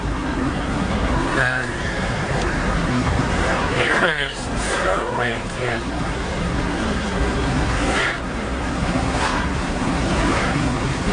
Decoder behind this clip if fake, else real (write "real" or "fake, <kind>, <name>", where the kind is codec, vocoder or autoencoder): fake, codec, SNAC